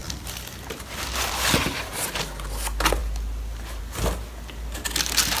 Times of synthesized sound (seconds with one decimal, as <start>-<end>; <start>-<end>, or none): 0.0-1.9